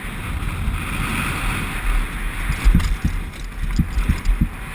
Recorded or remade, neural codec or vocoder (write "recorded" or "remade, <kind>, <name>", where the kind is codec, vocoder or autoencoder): recorded